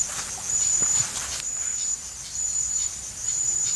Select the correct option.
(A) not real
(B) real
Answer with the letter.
A